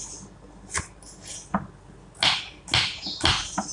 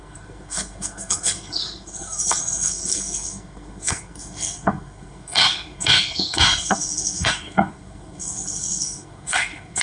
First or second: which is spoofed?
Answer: second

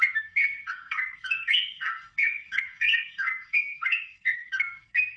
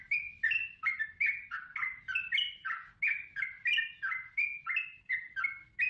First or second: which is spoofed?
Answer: first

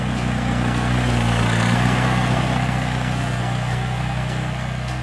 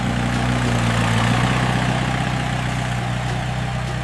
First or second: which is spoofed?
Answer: first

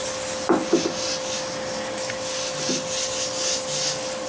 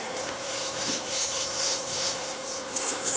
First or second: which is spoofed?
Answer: second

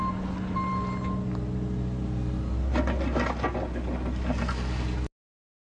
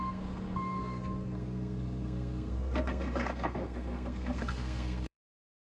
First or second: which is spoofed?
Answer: second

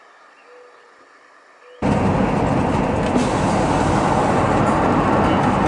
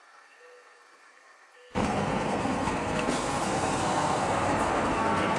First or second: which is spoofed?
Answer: second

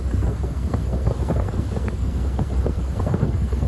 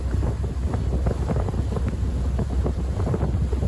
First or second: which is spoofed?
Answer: first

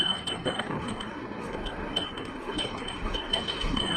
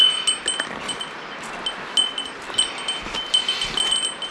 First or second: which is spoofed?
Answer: first